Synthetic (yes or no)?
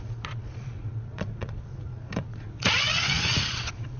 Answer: yes